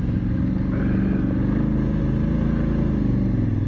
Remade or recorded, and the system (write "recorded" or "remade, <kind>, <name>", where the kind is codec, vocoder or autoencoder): recorded